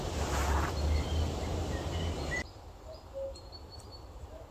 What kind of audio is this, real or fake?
real